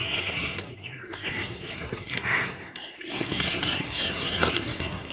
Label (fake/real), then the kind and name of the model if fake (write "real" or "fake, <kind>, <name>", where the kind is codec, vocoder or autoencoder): fake, codec, SNAC